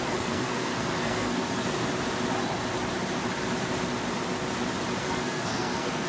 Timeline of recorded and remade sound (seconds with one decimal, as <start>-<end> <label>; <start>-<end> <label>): 0.0-1.9 remade; 1.9-5.0 recorded; 5.0-6.1 remade